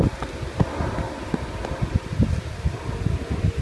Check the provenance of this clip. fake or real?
real